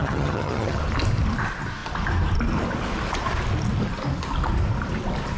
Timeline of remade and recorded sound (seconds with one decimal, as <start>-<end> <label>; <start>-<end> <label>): 0.0-0.8 remade; 0.8-5.4 recorded